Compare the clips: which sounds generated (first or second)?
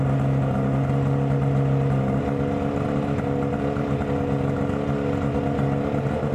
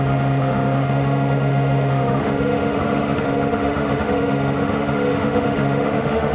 second